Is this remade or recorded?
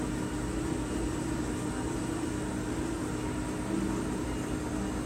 recorded